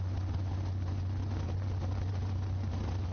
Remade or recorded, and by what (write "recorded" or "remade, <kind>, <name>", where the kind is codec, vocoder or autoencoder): recorded